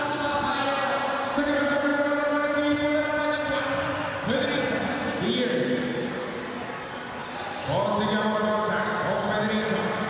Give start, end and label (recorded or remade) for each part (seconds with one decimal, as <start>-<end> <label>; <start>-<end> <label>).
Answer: 0.0-10.1 recorded